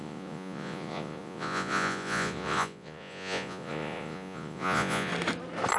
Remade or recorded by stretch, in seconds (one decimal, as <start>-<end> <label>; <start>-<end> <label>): 0.0-5.1 remade; 5.1-5.8 recorded